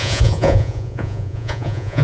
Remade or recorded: remade